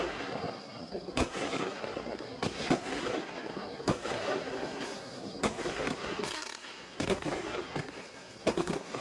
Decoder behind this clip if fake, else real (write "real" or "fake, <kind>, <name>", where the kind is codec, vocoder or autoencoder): fake, codec, SNAC